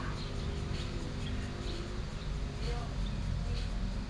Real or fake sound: real